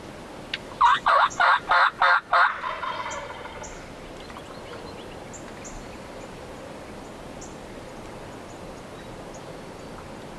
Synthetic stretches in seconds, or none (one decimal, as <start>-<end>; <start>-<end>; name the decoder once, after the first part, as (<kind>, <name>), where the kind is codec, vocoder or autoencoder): 0.9-1.5 (vocoder, Vocos)